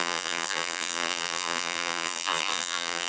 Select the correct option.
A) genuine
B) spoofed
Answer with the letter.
B